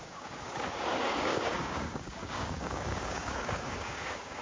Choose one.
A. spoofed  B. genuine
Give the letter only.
A